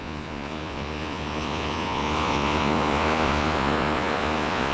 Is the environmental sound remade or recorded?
remade